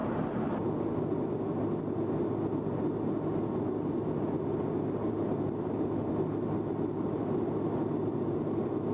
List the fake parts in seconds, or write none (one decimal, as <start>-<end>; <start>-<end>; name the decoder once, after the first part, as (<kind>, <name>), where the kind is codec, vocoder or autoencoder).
none